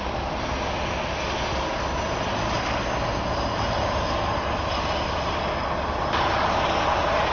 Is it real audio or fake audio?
real